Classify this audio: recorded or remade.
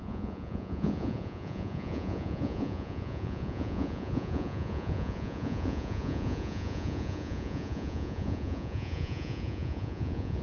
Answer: remade